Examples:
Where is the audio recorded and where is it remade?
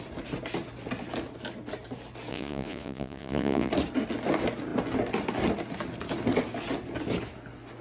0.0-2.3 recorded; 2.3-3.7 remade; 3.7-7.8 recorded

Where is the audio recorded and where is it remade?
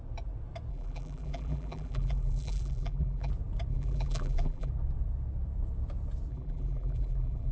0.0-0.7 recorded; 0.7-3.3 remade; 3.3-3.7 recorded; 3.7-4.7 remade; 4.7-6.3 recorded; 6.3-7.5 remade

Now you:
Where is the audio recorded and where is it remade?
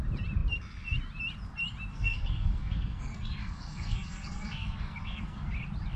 0.0-1.9 recorded; 1.9-5.5 remade; 5.5-6.0 recorded